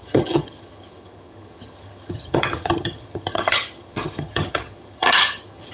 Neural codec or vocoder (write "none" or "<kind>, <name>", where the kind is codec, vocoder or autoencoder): vocoder, HiFi-GAN